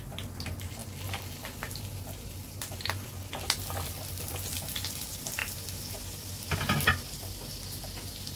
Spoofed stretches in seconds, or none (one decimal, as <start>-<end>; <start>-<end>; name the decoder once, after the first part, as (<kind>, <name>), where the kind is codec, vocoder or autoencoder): none